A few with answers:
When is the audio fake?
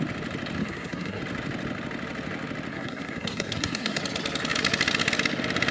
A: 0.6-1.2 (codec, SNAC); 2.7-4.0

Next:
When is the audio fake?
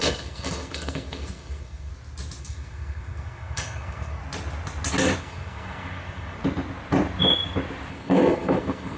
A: 0.0-1.9 (codec, SNAC); 2.4-4.2; 5.2-6.4; 7.9-9.0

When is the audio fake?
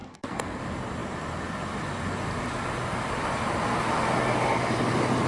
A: 0.0-0.6 (codec, SNAC)